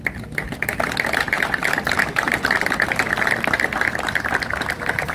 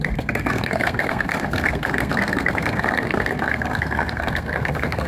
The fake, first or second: second